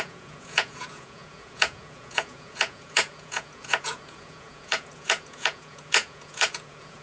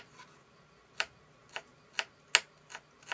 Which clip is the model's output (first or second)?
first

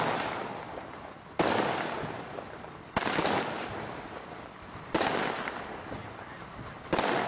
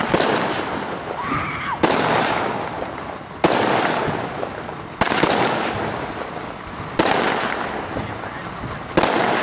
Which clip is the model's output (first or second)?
first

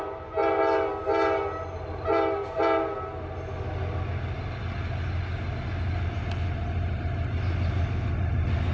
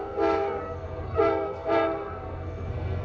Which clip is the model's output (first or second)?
second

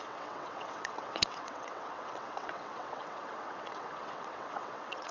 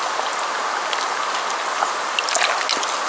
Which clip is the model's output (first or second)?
first